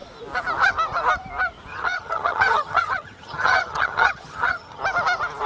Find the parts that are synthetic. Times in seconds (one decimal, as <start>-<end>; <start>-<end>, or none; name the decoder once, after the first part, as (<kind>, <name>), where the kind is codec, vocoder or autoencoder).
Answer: 1.7-4.8 (vocoder, HiFi-GAN)